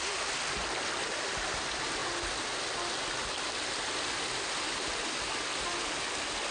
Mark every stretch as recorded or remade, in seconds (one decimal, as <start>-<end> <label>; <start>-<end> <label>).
0.0-6.5 recorded